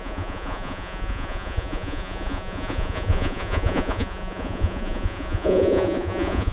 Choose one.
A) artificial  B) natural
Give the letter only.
A